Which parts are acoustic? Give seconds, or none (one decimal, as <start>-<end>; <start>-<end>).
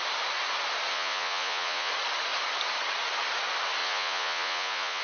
0.0-0.9; 1.9-3.8